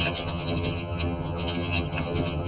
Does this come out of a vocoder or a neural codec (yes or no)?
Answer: yes